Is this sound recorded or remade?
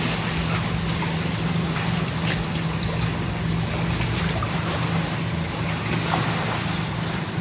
recorded